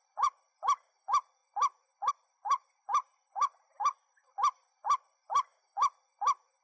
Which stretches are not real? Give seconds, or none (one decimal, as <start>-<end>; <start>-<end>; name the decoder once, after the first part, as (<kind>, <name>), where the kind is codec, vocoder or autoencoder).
0.0-1.4 (vocoder, BigVGAN v2); 2.1-5.5